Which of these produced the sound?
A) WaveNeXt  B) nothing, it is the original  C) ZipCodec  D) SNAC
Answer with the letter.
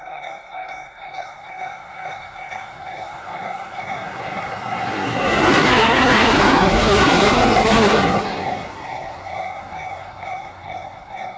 D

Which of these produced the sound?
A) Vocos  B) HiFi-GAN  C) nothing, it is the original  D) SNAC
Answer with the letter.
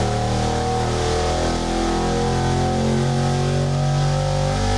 C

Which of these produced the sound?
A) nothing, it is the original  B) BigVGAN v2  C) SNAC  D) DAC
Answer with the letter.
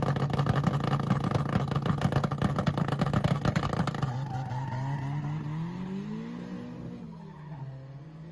A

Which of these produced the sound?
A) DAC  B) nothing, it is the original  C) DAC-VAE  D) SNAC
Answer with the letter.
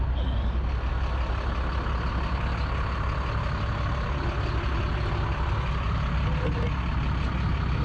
B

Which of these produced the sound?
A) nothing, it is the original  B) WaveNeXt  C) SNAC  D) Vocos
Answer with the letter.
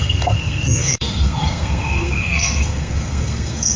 C